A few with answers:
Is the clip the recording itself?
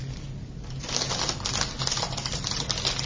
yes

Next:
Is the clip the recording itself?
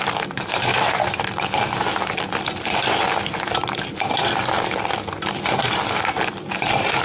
yes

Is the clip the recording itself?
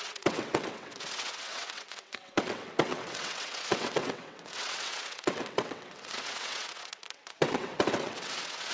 no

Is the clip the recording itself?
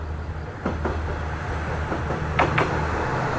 yes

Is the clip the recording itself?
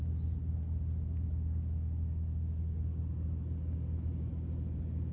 yes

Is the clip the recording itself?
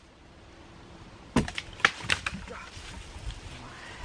no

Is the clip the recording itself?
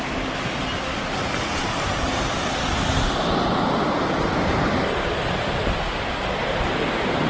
yes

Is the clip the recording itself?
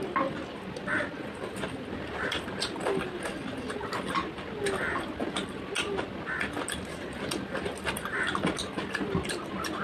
yes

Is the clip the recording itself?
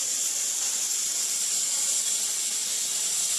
yes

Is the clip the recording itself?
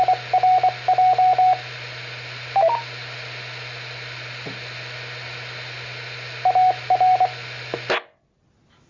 yes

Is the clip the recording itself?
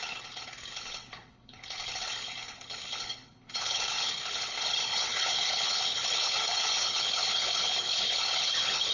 no